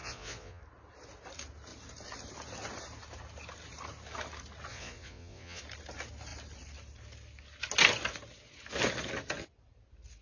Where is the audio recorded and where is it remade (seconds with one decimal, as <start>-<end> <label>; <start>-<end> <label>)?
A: 0.0-0.6 remade; 0.6-4.7 recorded; 4.7-5.6 remade; 5.6-10.2 recorded